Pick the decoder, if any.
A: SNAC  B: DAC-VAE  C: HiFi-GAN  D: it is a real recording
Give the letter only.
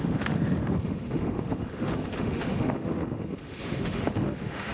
B